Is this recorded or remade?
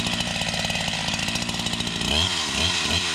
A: recorded